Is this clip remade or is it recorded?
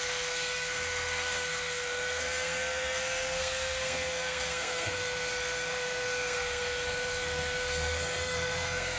remade